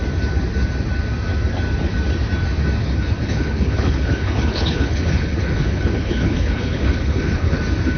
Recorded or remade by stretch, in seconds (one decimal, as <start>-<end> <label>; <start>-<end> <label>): 0.0-2.8 recorded; 2.8-7.6 remade; 7.6-8.0 recorded